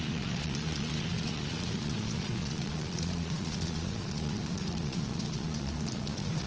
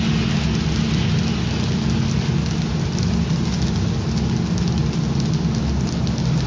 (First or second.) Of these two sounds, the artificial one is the first